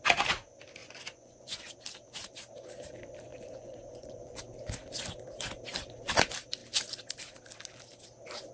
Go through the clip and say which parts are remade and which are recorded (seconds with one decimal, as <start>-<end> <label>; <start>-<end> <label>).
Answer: 0.0-0.8 recorded; 0.8-1.7 remade; 1.7-3.3 recorded; 3.3-4.4 remade; 4.4-8.5 recorded